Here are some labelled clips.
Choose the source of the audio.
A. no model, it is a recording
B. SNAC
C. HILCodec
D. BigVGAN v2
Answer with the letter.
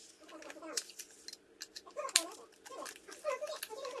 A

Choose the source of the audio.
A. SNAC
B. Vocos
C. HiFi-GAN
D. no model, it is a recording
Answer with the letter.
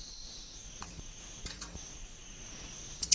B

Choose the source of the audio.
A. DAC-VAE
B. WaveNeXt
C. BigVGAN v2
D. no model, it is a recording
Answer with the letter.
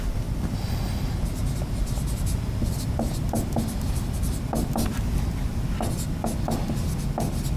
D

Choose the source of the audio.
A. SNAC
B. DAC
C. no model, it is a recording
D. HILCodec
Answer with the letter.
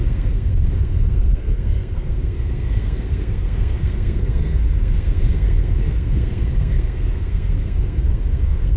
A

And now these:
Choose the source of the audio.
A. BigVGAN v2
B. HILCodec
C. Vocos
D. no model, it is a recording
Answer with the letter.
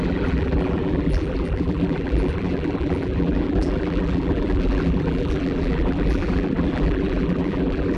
A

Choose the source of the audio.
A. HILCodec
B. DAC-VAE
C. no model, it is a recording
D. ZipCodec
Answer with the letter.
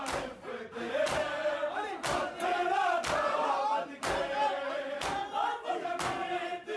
C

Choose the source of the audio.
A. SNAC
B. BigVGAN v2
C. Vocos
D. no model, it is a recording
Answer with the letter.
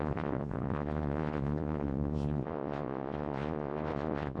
C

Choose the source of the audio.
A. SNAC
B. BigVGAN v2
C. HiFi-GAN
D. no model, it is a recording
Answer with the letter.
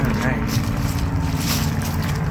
B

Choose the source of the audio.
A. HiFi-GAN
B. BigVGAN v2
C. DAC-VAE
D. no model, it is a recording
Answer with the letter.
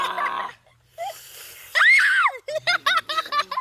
D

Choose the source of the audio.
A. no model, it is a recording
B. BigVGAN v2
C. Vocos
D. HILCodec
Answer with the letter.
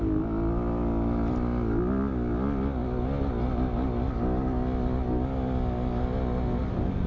A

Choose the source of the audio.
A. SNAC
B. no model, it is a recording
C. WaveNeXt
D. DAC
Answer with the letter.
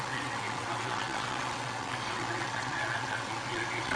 C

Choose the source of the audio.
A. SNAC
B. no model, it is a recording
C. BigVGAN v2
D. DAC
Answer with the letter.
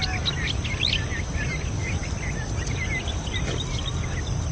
B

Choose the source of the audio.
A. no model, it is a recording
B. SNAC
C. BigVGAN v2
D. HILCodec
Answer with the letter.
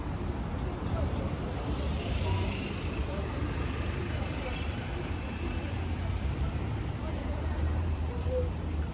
C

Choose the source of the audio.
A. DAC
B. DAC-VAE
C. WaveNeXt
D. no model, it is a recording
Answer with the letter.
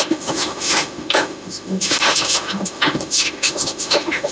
B